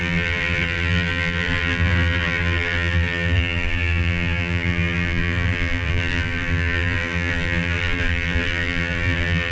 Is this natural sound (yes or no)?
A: no